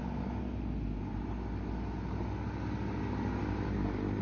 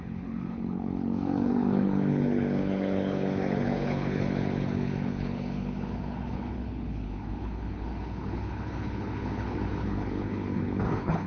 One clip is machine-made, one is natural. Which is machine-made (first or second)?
second